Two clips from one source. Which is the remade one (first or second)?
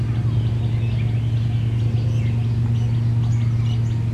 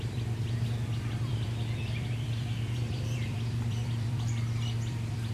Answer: second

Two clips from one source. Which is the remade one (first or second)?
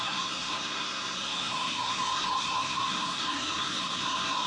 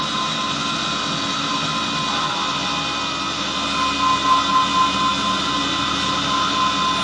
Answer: first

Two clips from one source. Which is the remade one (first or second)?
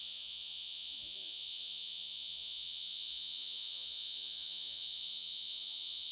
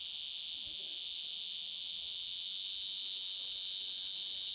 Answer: first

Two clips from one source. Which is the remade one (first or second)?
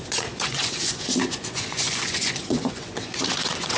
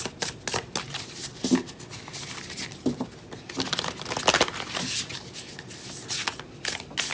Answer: first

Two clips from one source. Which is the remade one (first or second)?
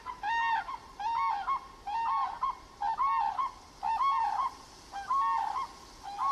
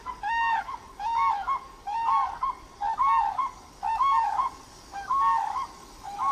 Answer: second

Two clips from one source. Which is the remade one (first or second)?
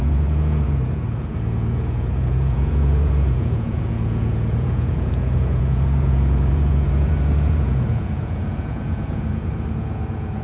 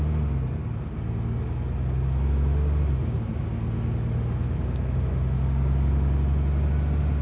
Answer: first